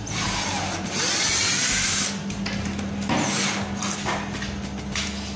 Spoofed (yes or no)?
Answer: no